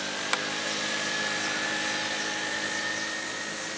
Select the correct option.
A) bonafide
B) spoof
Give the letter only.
A